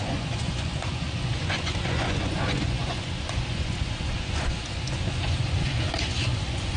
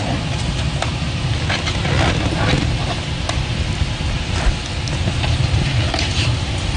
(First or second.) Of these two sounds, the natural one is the second